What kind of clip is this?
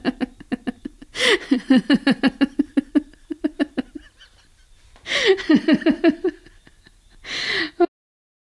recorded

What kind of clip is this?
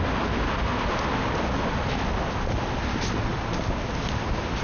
recorded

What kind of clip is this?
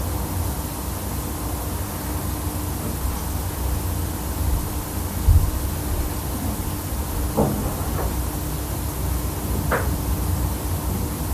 recorded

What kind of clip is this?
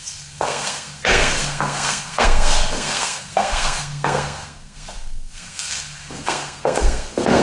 remade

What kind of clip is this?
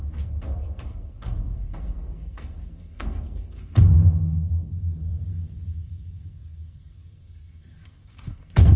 remade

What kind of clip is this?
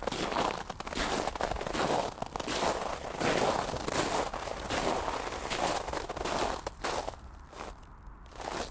recorded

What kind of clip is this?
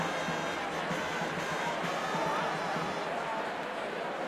recorded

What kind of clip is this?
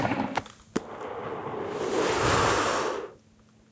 recorded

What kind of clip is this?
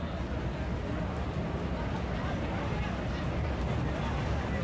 recorded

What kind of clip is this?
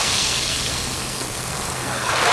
remade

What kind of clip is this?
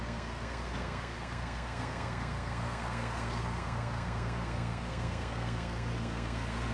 remade